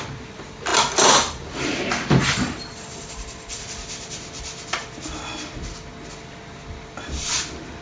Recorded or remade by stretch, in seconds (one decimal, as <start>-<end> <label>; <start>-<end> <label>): 0.0-2.2 recorded; 2.2-3.6 remade; 3.6-7.8 recorded